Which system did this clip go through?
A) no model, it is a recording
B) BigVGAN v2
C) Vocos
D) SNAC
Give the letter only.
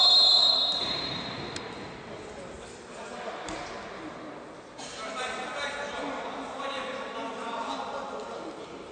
A